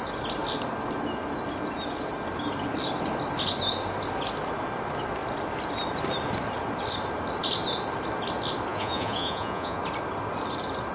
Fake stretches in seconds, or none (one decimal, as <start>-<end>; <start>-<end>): 8.7-9.8